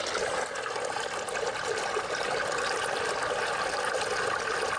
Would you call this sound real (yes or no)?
yes